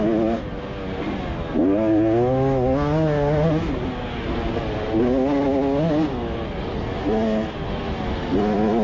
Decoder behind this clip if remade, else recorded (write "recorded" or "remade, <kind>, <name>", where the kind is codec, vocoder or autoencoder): recorded